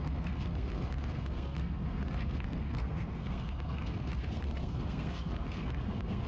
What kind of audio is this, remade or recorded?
remade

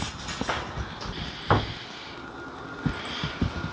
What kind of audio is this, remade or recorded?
recorded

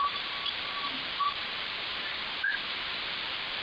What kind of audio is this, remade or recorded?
remade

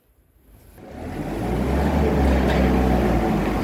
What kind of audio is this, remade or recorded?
recorded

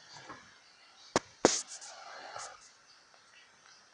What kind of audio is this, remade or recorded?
recorded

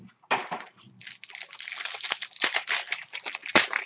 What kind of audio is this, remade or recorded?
recorded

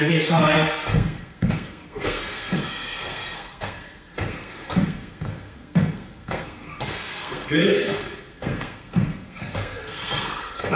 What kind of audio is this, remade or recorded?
remade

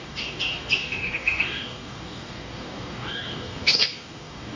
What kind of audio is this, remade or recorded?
remade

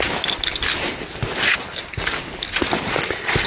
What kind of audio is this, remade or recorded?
recorded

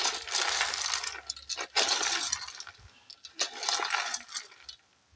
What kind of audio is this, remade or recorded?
recorded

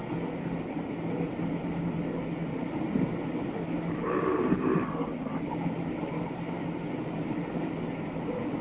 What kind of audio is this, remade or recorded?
recorded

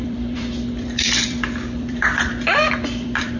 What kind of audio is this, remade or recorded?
remade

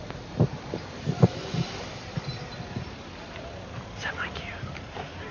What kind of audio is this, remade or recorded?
recorded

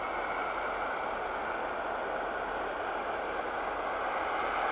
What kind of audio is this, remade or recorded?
recorded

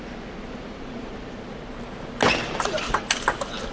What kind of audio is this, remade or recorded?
recorded